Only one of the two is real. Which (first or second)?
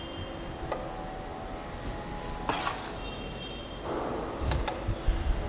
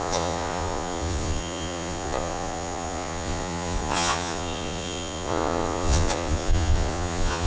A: first